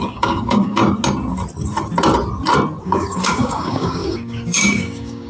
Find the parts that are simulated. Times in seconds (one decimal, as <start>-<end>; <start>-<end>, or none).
0.0-0.8; 2.8-5.3